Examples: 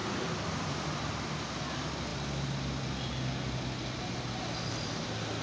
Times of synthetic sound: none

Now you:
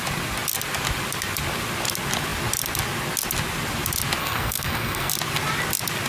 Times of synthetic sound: 4.2-5.1

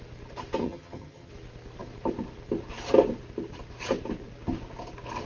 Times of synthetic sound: 0.6-1.3

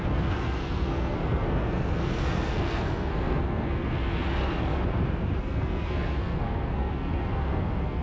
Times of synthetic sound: 0.0-4.4; 5.4-8.0

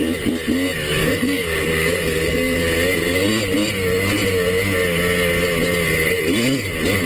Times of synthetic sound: 1.0-2.6